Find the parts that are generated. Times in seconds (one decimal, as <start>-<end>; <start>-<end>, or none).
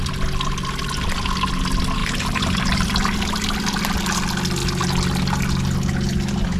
2.0-2.9